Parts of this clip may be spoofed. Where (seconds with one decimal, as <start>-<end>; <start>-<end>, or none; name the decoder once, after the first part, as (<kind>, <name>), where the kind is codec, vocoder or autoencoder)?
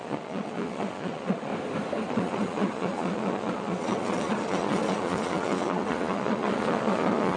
0.0-1.5 (vocoder, Vocos); 2.1-7.4